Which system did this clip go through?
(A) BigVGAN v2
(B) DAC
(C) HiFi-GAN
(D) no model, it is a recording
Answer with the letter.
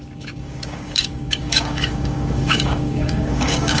B